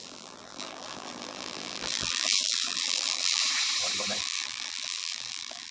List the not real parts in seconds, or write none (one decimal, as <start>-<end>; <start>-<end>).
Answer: 0.0-3.4; 4.2-5.7